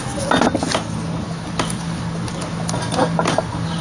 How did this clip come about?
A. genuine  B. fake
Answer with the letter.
A